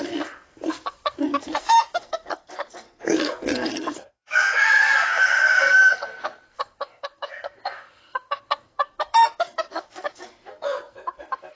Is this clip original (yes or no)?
no